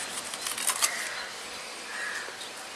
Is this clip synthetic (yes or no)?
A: no